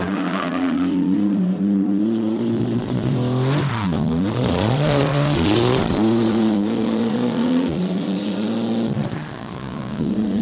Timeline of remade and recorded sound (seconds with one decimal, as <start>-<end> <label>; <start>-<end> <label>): 0.0-3.1 remade; 3.1-3.7 recorded; 3.7-10.4 remade